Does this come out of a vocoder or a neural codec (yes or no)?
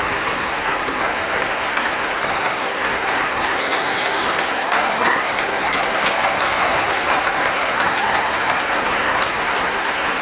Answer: yes